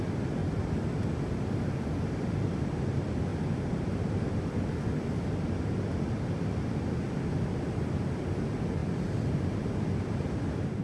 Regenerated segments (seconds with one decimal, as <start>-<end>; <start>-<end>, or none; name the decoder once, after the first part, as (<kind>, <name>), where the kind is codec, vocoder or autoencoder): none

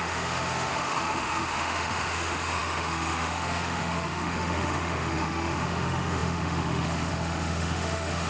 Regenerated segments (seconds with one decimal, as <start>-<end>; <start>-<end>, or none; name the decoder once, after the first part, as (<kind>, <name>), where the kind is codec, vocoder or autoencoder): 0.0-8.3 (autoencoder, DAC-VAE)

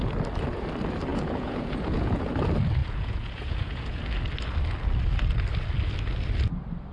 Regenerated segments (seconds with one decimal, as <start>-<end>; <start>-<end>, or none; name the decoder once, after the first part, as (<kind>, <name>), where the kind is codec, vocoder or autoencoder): 1.1-2.2 (vocoder, Vocos); 2.8-4.0